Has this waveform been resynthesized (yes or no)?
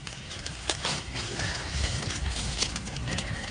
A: yes